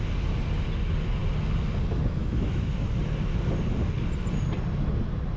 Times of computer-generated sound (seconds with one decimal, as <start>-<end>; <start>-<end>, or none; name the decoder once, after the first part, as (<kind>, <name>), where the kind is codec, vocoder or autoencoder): 2.2-2.9 (autoencoder, DAC-VAE)